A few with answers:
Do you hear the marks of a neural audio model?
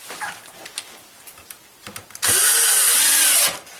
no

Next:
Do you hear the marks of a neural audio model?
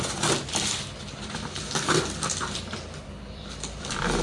yes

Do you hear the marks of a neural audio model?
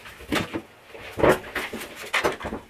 no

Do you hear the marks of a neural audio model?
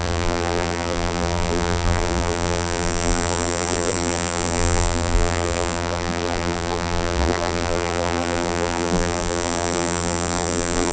yes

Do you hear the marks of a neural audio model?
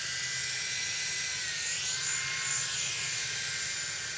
no